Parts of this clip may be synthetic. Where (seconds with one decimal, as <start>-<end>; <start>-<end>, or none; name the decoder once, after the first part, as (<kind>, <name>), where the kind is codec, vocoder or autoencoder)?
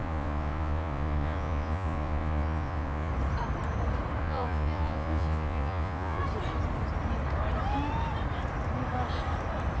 0.0-3.1 (vocoder, Vocos); 4.2-6.2